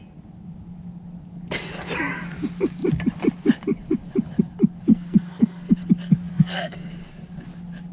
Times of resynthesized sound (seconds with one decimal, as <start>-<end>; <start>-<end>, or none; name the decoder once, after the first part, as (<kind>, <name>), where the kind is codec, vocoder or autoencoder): 4.9-5.8 (codec, SNAC); 6.3-6.9